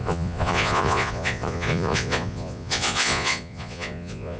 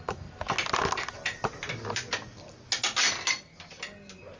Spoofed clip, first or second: first